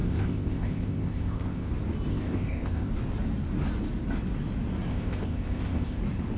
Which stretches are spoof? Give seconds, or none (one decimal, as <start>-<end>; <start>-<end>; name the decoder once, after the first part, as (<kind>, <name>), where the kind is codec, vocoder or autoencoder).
0.0-1.7 (codec, ZipCodec); 2.1-2.9; 4.9-6.0